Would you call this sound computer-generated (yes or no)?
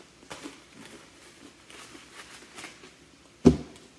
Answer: no